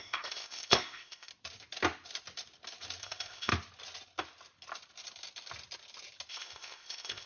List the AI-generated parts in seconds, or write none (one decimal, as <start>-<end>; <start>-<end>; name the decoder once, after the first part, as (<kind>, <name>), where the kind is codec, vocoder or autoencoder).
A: 0.0-1.3 (codec, ZipCodec); 3.0-3.5; 6.3-7.3